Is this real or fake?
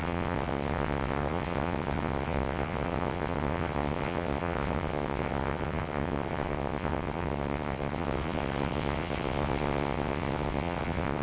fake